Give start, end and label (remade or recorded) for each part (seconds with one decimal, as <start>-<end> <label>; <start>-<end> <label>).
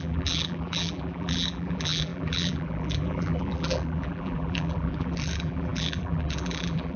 0.0-7.0 remade